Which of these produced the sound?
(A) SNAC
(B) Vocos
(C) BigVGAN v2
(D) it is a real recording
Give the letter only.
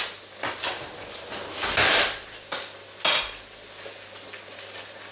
D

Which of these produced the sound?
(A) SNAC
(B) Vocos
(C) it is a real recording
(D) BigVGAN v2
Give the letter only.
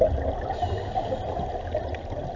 C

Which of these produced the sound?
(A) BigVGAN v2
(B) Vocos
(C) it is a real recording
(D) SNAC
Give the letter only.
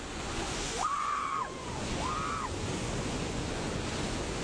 B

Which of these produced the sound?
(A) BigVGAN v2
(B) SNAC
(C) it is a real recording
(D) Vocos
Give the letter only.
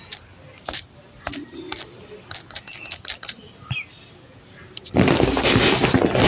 C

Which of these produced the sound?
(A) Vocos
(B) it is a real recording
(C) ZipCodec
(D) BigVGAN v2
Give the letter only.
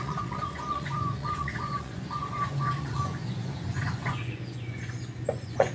A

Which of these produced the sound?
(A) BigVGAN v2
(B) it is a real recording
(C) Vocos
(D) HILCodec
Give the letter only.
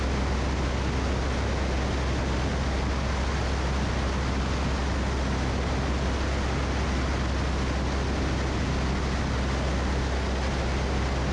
B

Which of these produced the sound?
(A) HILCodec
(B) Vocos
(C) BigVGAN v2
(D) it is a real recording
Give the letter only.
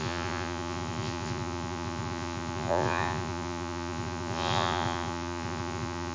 B